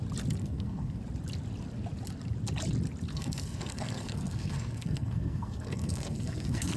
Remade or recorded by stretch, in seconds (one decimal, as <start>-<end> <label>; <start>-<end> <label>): 0.0-0.4 recorded; 0.4-1.0 remade; 1.0-3.1 recorded; 3.1-6.8 remade